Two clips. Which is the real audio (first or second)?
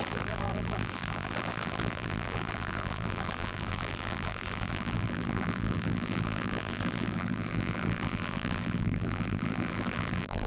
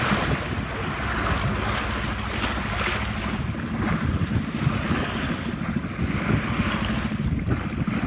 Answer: second